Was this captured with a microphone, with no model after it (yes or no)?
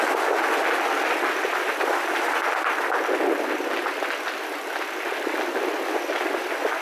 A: yes